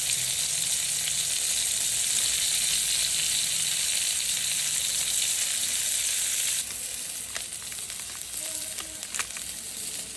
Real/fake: real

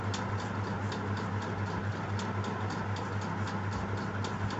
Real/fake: real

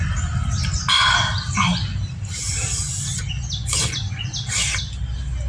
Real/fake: real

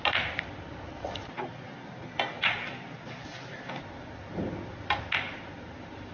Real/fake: real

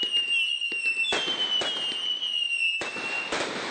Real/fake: real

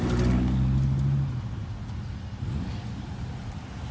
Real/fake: real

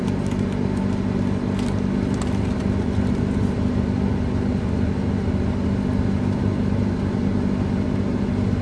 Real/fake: real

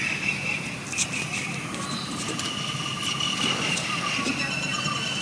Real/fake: real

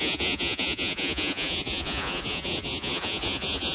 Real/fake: fake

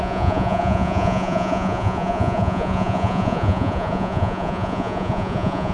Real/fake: fake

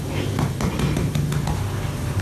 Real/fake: real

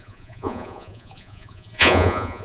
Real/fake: fake